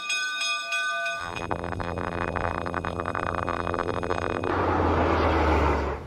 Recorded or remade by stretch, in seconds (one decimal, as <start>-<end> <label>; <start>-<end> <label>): 0.0-1.2 recorded; 1.2-4.5 remade; 4.5-6.1 recorded

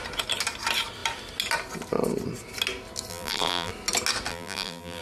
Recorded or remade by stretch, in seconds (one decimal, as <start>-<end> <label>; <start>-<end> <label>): 0.0-3.1 recorded; 3.1-3.7 remade; 3.7-4.3 recorded; 4.3-5.0 remade

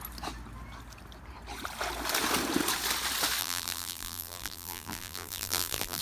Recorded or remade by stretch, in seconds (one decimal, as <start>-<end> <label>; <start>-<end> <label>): 0.0-3.4 recorded; 3.4-6.0 remade

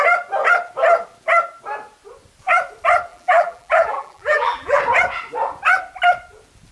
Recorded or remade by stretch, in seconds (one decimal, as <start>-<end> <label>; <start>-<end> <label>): 0.0-3.1 recorded; 3.1-4.8 remade; 4.8-6.7 recorded

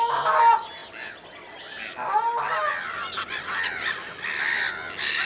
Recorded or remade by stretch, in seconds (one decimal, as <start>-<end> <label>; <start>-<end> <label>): 0.0-5.2 recorded

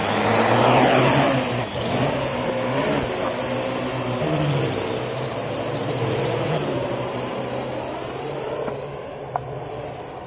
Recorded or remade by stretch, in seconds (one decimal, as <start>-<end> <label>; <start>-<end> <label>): 0.0-5.4 recorded; 5.4-9.3 remade; 9.3-10.3 recorded

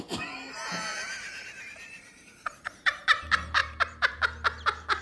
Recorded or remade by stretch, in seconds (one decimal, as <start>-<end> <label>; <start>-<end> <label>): 0.0-1.1 recorded; 1.1-3.0 remade; 3.0-3.6 recorded; 3.6-4.2 remade; 4.2-5.0 recorded